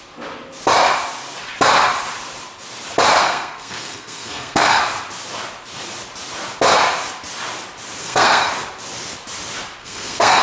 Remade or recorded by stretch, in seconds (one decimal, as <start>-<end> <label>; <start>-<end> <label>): 0.0-3.2 recorded; 3.2-4.8 remade; 4.8-8.0 recorded; 8.0-8.5 remade; 8.5-9.8 recorded; 9.8-10.4 remade